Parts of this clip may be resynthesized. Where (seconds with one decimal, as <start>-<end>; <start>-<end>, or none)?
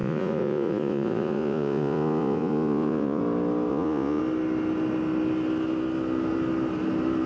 0.0-3.2; 3.7-4.2